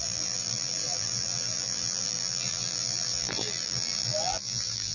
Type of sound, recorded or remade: remade